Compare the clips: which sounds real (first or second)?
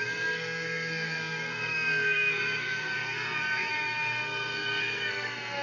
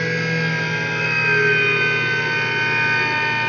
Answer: second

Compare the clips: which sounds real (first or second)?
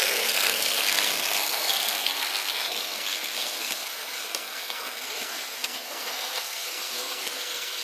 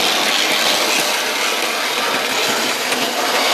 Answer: second